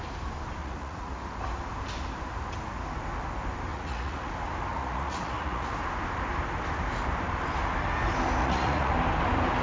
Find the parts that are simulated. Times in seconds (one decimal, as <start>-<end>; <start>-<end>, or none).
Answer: 0.6-1.1; 3.7-4.3; 4.7-5.7; 8.4-8.9